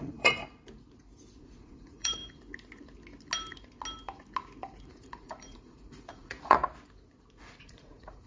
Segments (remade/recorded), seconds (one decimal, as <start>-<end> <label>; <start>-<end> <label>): 0.0-0.4 remade; 0.4-1.4 recorded; 1.4-2.2 remade; 2.2-4.9 recorded; 4.9-6.6 remade; 6.6-7.4 recorded; 7.4-8.3 remade